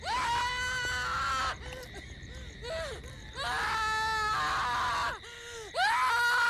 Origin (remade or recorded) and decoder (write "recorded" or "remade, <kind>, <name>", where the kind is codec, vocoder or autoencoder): recorded